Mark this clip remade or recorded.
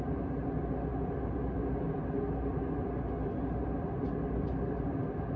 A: recorded